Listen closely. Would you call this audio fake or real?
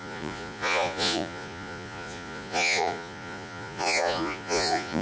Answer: fake